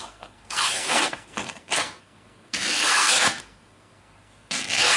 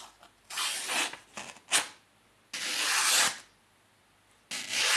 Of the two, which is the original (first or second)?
second